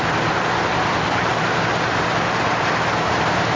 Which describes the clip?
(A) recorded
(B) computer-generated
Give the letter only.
A